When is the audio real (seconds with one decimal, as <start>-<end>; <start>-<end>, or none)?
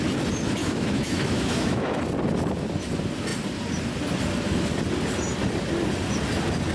0.0-0.6; 2.0-6.7